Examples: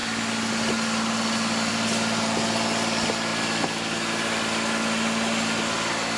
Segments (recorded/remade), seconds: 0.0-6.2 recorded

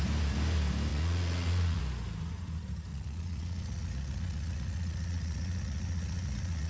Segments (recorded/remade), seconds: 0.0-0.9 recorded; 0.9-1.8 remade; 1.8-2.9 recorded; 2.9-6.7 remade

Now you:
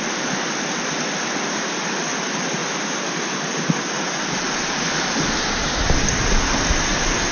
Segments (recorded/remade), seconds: 0.0-7.3 recorded